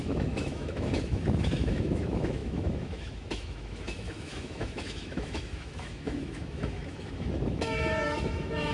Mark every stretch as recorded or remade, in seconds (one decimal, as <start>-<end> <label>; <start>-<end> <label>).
0.0-8.7 remade